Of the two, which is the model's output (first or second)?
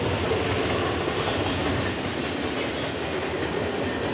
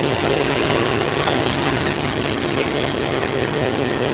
second